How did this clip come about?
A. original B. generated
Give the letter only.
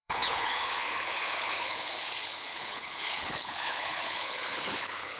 B